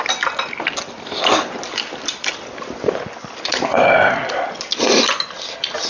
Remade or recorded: recorded